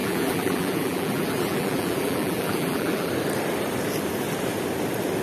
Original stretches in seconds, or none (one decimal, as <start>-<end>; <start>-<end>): 3.1-5.2